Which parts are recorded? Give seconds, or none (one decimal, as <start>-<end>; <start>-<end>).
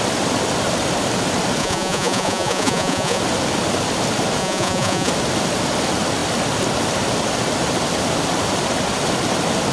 0.0-1.6; 3.2-4.4; 5.1-9.7